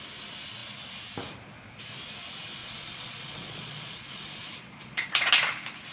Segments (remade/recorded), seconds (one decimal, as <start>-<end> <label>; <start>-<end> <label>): 0.0-2.6 recorded; 2.6-5.3 remade; 5.3-5.9 recorded